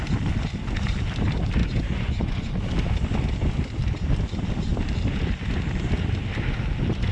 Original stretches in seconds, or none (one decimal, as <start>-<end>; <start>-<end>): 0.0-1.6; 2.5-7.1